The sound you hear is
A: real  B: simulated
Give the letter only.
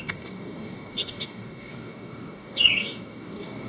B